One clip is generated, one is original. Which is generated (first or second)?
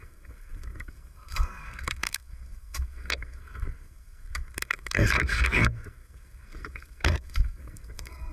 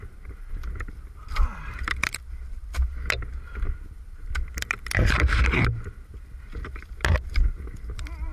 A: first